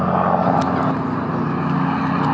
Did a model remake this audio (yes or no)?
no